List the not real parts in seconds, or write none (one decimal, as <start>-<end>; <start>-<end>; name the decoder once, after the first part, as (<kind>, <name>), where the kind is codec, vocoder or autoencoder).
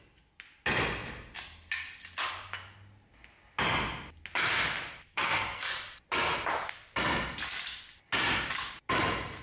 5.1-5.7 (codec, SNAC)